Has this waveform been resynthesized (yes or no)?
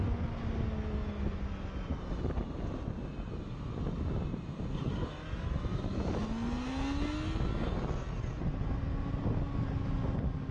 no